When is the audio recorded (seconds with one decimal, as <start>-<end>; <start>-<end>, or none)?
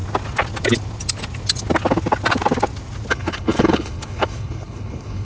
0.0-3.1